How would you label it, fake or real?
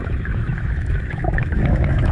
fake